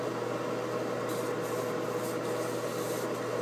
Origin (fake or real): real